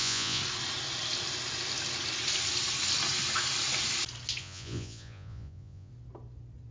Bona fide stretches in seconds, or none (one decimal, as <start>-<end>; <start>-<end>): 0.4-4.4; 5.9-6.7